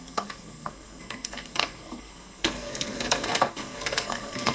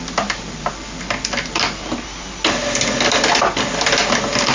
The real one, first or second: second